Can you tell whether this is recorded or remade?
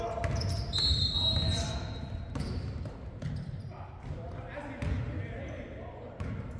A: recorded